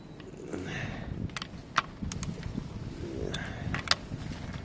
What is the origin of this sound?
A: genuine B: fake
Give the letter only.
A